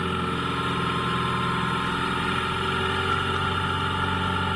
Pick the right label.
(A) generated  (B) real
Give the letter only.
B